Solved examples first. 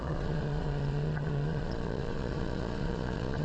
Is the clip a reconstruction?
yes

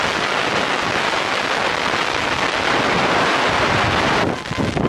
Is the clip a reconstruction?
no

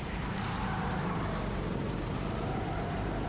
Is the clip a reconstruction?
yes